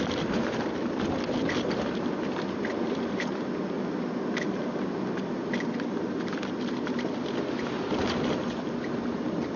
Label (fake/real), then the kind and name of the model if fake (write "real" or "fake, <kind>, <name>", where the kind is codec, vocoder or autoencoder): real